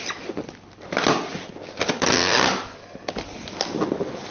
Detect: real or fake real